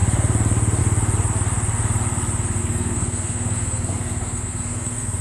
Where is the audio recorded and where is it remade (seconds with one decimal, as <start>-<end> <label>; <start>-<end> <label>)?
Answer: 0.0-2.6 recorded; 2.6-5.2 remade